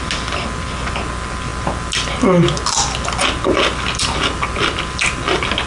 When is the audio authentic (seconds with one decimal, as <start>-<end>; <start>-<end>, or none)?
0.0-5.7